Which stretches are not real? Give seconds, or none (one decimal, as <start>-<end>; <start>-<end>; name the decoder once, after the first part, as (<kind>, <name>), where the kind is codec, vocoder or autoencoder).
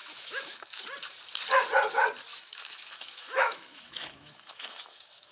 0.0-0.8 (autoencoder, DAC-VAE); 2.3-5.3